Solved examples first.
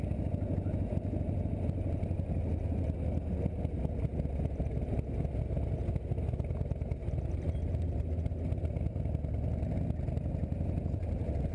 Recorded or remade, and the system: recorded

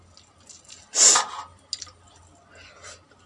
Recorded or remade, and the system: recorded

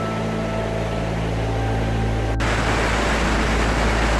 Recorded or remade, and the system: recorded